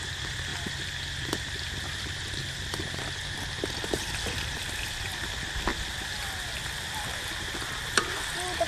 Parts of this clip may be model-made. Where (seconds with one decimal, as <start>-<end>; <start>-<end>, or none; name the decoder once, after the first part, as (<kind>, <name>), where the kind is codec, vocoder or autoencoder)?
none